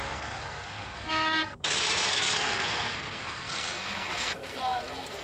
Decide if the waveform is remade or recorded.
remade